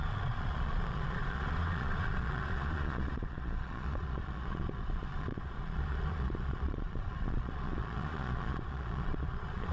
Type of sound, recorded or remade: remade